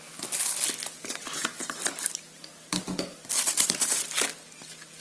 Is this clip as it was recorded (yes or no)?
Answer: yes